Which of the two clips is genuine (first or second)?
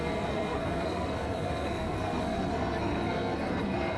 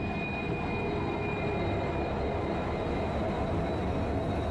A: second